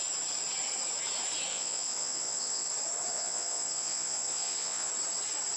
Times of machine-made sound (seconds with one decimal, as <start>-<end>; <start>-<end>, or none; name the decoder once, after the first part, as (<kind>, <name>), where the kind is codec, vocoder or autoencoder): 1.5-2.7 (vocoder, Vocos); 3.1-4.9